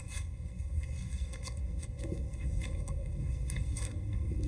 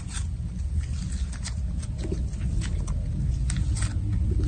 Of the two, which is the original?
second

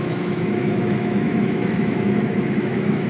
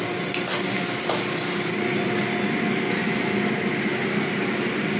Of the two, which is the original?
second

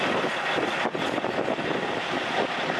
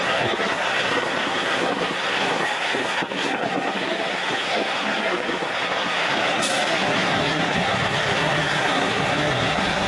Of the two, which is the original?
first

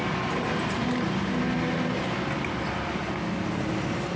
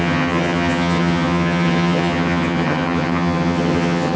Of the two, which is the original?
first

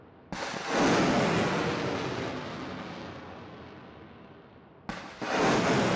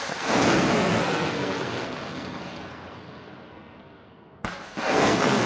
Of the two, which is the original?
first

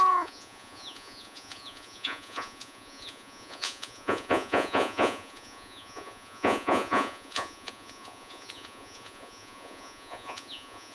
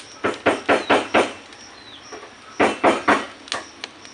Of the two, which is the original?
second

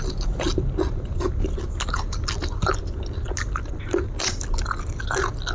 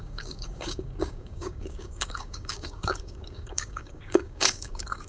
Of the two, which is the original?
first